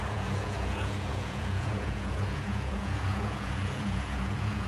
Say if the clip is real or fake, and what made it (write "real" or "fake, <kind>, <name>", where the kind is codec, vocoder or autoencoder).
fake, vocoder, Vocos